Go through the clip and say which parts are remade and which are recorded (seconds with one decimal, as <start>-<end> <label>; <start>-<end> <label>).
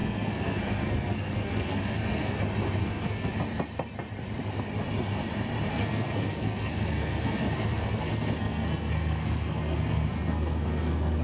0.0-2.4 remade; 2.4-2.8 recorded; 2.8-3.3 remade; 3.3-5.7 recorded; 5.7-11.2 remade